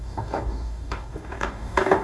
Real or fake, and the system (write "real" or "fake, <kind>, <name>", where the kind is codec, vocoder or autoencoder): fake, codec, DAC